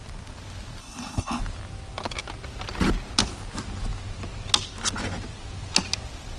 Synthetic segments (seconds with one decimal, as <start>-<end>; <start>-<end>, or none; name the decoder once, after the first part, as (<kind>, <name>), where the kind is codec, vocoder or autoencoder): 0.8-1.4 (codec, HILCodec)